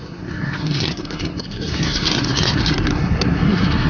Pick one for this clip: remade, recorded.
remade